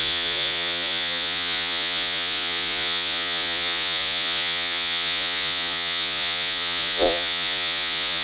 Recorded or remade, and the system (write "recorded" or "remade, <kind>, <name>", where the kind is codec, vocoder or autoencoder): remade, vocoder, Vocos